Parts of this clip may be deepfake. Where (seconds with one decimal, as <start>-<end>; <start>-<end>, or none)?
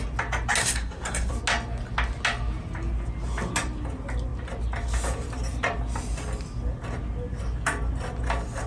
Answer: 0.6-1.3